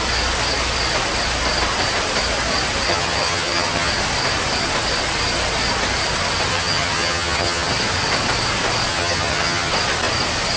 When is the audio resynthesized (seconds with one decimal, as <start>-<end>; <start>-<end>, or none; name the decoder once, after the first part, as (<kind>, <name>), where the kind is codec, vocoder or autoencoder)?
2.9-3.9 (vocoder, HiFi-GAN); 6.5-7.7; 8.9-9.7